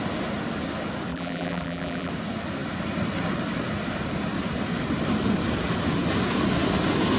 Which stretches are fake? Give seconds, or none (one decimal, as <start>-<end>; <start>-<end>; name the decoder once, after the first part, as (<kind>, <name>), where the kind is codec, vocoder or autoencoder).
1.1-2.1 (vocoder, BigVGAN v2)